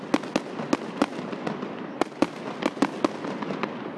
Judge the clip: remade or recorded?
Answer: recorded